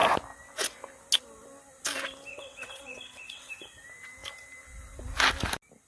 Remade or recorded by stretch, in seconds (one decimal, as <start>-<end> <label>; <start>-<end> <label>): 0.0-2.3 recorded; 2.3-3.5 remade; 3.5-5.9 recorded